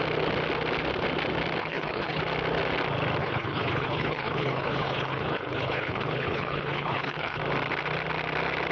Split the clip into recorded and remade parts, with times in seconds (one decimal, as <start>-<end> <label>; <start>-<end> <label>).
0.0-1.6 recorded; 1.6-2.2 remade; 2.2-3.2 recorded; 3.2-7.4 remade; 7.4-8.7 recorded